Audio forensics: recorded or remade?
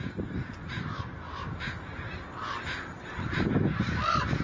recorded